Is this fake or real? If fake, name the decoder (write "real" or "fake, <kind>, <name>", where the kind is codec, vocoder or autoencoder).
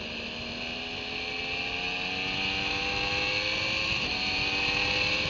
real